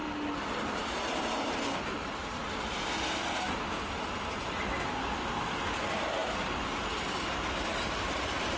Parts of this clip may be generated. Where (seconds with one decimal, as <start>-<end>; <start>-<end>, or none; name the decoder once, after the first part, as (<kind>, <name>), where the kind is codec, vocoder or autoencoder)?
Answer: none